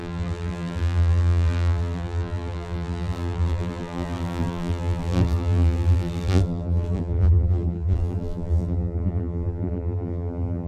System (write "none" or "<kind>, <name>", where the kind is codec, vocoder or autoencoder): vocoder, BigVGAN v2